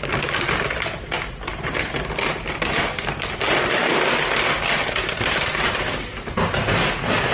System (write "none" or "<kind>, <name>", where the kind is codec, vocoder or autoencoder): vocoder, BigVGAN v2